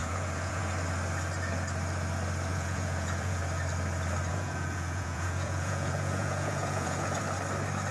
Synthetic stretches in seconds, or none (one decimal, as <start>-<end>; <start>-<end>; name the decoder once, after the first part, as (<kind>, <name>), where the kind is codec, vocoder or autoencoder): 0.0-0.6 (vocoder, Vocos); 2.5-3.4; 4.3-7.2